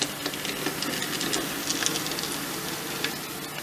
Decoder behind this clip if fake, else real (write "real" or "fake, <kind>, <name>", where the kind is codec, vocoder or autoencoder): real